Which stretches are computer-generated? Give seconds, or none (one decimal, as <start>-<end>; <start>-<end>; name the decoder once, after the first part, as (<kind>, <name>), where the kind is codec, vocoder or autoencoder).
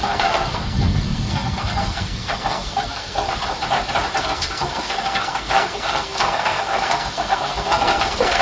0.0-3.3 (codec, SNAC); 4.2-8.4